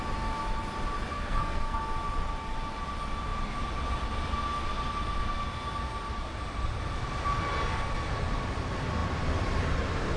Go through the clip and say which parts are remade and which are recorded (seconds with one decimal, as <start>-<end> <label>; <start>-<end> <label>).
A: 0.0-1.1 recorded; 1.1-1.8 remade; 1.8-10.2 recorded